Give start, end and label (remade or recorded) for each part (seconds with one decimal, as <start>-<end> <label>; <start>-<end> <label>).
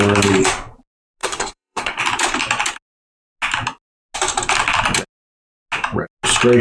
0.0-1.2 recorded; 1.2-2.0 remade; 2.0-6.6 recorded